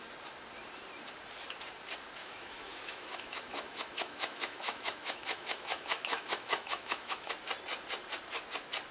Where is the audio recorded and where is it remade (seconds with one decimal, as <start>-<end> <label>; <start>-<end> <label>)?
0.0-2.2 recorded; 2.2-7.3 remade; 7.3-8.9 recorded